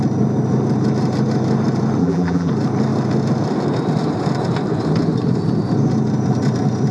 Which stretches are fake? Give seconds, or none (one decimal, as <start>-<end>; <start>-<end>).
2.0-2.5